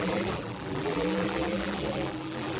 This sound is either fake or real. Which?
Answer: fake